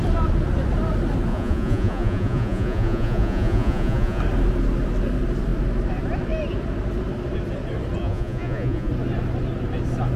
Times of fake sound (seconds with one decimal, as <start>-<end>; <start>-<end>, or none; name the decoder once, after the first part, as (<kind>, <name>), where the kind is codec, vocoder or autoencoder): 1.3-4.2 (vocoder, Vocos); 8.0-8.9

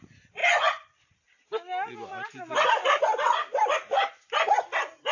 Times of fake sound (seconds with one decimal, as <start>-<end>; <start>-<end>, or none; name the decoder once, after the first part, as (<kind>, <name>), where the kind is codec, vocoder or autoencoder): none

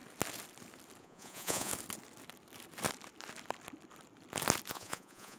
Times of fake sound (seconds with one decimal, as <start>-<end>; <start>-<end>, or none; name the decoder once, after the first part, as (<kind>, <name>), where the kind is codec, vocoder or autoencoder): 1.0-1.7 (vocoder, Vocos); 4.7-5.4